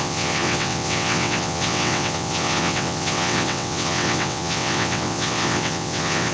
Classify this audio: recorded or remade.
remade